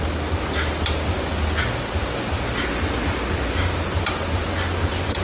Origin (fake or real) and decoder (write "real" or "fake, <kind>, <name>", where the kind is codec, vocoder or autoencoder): real